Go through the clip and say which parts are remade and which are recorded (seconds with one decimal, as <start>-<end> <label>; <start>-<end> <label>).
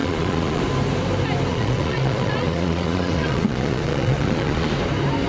0.0-0.6 remade; 0.6-1.5 recorded; 1.5-4.7 remade; 4.7-5.3 recorded